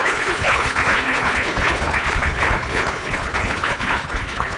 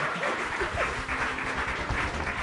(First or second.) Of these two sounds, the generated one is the first